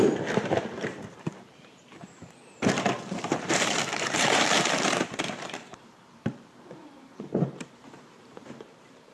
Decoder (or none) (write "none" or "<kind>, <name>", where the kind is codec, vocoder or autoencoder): vocoder, BigVGAN v2